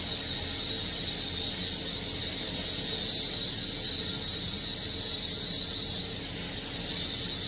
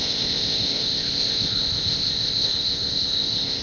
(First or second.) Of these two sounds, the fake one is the second